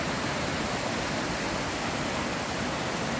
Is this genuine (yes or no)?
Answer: yes